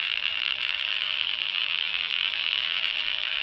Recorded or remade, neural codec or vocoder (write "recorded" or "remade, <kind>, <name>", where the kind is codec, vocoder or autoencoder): remade, vocoder, BigVGAN v2